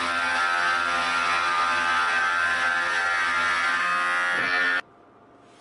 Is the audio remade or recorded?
recorded